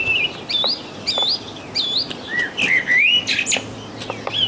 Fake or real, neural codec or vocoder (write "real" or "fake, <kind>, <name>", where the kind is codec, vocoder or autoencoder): real